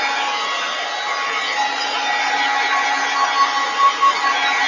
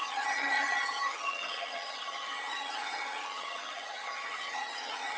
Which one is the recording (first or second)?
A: first